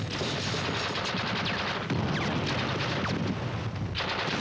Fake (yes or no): no